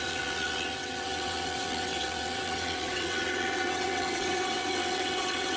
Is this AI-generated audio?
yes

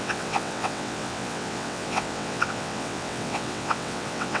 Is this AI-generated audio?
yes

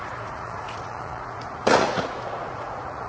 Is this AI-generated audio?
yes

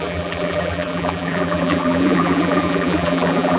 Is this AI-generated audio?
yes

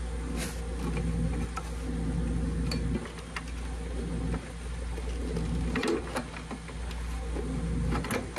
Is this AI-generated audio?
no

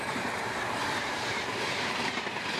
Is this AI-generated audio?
yes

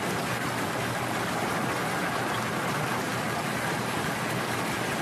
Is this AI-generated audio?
no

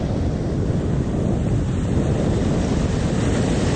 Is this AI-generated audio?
no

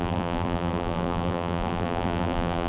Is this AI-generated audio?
yes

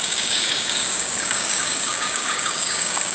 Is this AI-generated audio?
yes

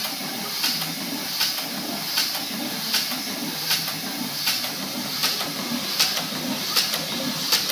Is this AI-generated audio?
no